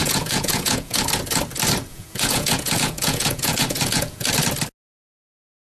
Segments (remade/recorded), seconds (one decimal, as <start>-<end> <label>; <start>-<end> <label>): 0.0-1.0 remade; 1.0-1.9 recorded; 1.9-4.3 remade; 4.3-5.6 recorded